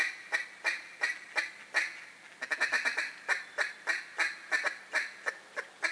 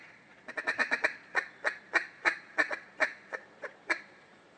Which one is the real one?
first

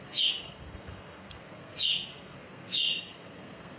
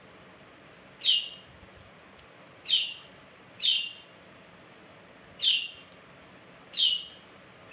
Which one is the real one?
second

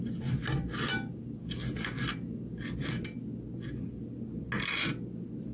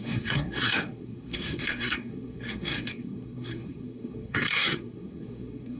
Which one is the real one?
first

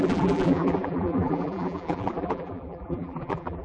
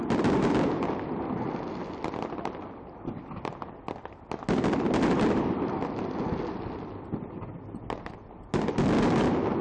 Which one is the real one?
second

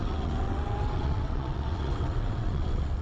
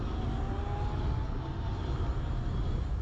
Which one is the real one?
second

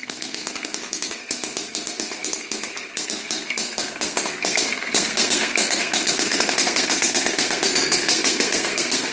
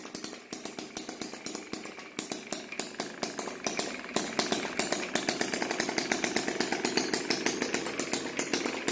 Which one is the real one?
second